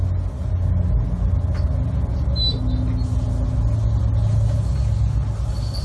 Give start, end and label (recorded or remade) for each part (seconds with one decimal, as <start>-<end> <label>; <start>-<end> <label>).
0.0-5.8 recorded